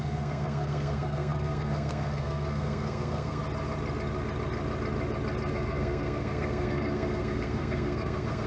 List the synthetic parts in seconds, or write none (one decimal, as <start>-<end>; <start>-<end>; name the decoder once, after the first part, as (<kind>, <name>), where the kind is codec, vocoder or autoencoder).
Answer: 0.0-3.4 (codec, SNAC); 5.5-8.5